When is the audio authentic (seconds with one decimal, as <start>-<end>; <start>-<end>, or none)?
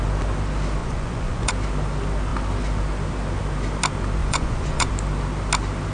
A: 0.0-0.8; 1.5-4.2; 4.9-5.9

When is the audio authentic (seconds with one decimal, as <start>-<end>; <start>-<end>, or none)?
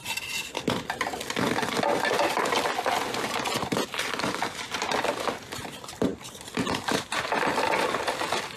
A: 0.0-8.6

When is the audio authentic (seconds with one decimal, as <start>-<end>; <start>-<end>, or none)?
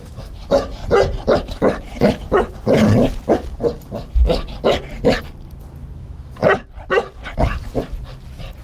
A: 0.8-6.0; 6.4-8.6